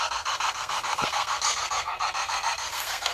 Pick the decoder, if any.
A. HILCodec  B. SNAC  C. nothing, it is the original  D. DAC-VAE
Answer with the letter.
B